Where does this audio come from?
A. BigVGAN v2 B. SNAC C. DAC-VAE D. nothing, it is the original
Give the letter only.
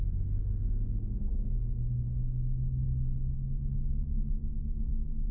D